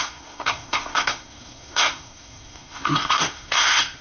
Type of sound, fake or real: fake